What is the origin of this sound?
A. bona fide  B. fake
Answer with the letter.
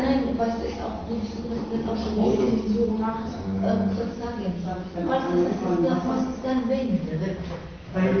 A